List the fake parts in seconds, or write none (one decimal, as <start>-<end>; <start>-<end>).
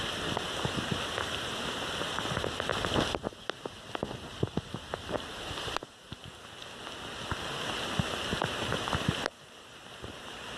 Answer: none